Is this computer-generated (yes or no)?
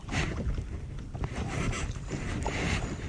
no